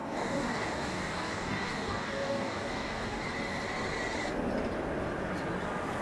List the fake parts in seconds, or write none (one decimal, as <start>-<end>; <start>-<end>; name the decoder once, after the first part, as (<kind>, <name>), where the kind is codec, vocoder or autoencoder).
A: 0.0-3.2 (codec, DAC)